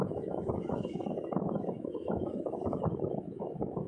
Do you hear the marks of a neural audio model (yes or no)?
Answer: yes